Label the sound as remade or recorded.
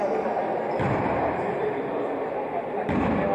recorded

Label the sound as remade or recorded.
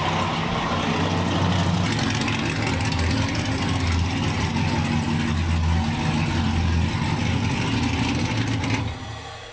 recorded